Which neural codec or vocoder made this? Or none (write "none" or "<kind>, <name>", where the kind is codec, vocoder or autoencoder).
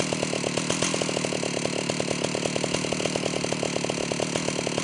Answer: none